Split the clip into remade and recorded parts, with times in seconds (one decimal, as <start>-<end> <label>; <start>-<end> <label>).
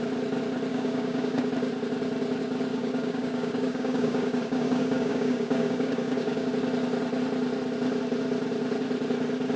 0.0-0.7 recorded; 0.7-1.5 remade; 1.5-2.7 recorded; 2.7-6.5 remade; 6.5-9.6 recorded